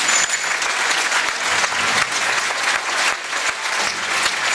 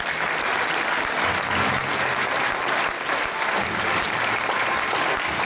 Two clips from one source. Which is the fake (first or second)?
first